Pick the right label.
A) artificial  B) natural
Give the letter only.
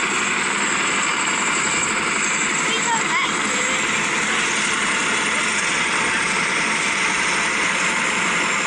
B